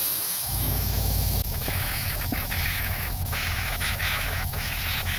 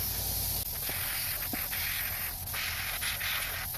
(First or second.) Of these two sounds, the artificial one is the first